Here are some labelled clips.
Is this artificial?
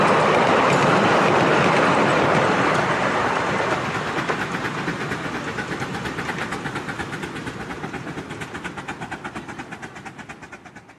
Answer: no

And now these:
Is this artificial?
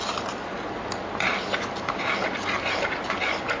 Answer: no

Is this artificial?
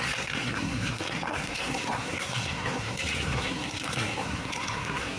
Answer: yes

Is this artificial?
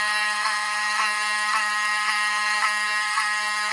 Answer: yes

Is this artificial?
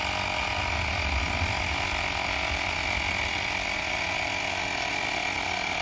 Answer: no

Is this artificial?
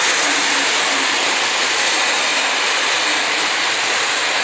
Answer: no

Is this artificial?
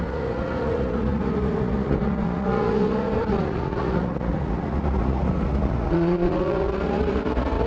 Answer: yes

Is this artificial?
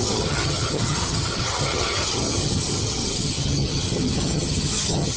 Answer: yes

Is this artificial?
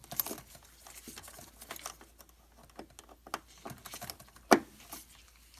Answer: no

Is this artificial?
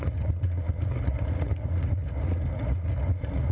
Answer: yes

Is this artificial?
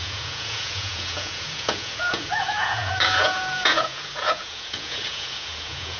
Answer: yes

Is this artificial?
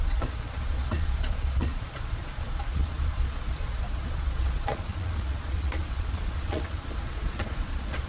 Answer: yes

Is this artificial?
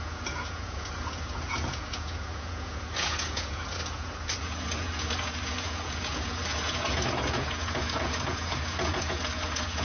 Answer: yes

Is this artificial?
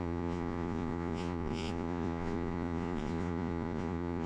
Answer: yes